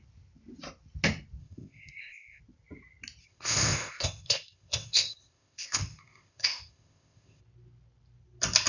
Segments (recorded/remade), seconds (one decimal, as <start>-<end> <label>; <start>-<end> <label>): 0.0-1.4 recorded; 1.4-2.4 remade; 2.4-3.2 recorded; 3.2-7.4 remade; 7.4-8.7 recorded